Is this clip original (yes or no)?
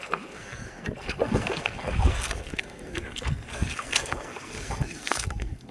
no